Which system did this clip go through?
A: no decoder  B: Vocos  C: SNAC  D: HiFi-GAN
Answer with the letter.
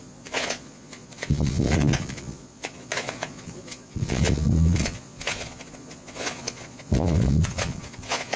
B